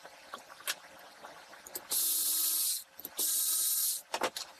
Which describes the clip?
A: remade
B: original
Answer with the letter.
B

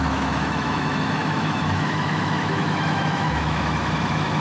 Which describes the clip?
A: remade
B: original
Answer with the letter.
A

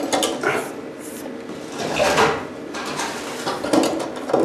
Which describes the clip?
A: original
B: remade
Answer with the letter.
A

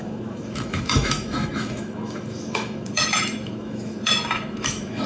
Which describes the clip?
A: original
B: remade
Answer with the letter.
B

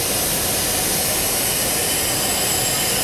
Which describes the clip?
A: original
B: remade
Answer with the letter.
A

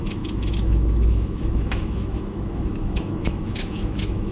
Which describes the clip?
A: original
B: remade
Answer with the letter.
B